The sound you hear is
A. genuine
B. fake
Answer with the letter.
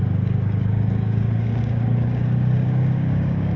B